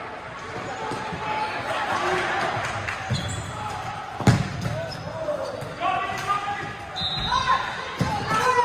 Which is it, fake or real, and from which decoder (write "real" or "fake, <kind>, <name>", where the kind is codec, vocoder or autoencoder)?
real